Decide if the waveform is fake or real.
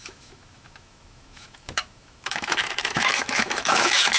fake